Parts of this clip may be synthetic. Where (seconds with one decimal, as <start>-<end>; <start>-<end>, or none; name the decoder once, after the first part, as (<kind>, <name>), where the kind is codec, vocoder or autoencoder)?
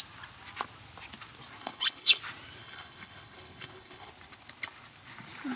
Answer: 1.6-2.2 (codec, HILCodec); 2.6-4.1